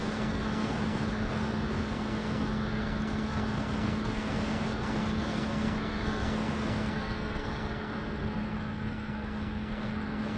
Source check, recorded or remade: remade